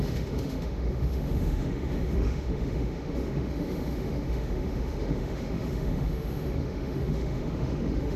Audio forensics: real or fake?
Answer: fake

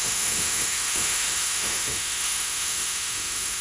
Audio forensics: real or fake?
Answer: fake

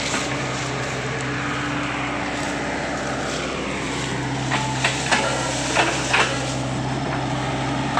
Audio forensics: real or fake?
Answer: real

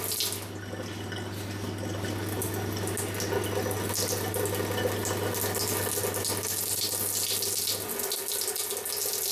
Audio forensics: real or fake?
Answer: real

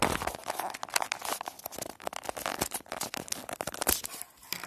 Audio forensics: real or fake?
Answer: real